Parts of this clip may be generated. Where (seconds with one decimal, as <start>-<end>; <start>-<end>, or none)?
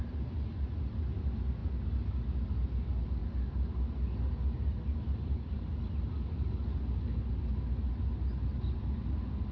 none